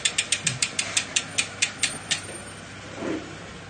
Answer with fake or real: real